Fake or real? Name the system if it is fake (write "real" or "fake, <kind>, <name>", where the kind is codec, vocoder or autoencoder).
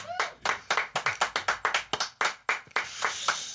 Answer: real